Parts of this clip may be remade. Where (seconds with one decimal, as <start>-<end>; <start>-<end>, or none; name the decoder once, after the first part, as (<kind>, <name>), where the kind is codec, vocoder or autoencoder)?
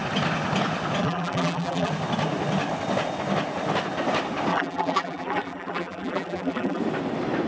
1.0-1.9 (vocoder, BigVGAN v2); 4.5-6.8